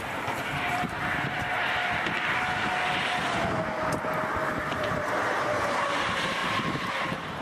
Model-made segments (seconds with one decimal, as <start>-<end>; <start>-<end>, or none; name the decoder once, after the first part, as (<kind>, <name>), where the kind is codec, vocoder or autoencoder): 0.0-1.8 (vocoder, BigVGAN v2); 4.5-7.4